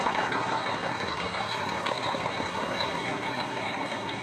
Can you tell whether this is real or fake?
fake